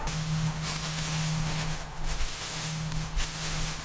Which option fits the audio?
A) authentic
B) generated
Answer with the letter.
B